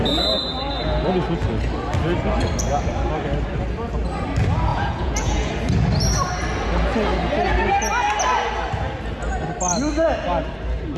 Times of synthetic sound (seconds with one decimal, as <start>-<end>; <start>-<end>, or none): 4.7-5.5